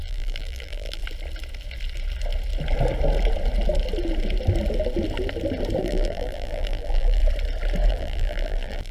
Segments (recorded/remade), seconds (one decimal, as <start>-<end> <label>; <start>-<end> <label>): 0.0-1.0 remade; 1.0-5.8 recorded; 5.8-7.2 remade; 7.2-7.9 recorded; 7.9-8.9 remade